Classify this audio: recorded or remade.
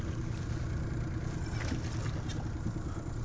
recorded